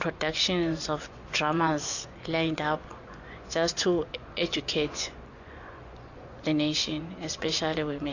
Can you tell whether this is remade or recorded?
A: remade